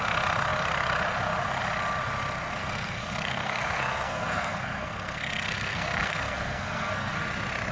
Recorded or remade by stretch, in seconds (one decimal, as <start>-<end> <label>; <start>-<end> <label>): 0.0-2.6 recorded; 2.6-7.2 remade; 7.2-7.7 recorded